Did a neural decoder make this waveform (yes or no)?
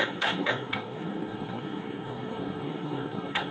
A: yes